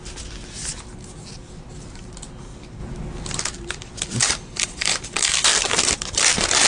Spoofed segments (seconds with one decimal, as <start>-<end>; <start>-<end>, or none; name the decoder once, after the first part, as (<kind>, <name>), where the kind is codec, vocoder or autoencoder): none